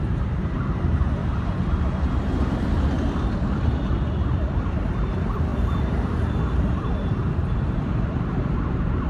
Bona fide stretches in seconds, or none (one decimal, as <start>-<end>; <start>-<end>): 1.2-5.1